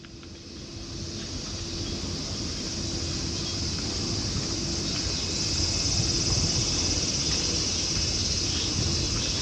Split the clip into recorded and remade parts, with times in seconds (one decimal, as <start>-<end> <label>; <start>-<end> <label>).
0.0-9.4 recorded